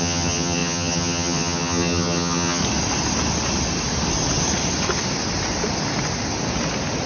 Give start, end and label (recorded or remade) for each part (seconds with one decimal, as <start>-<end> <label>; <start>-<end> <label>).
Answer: 0.0-2.6 remade; 2.6-7.1 recorded